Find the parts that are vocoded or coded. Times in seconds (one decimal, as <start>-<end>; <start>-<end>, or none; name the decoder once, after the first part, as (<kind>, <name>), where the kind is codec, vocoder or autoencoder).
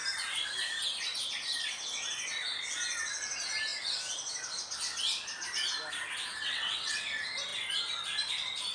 6.4-7.0 (vocoder, WaveNeXt)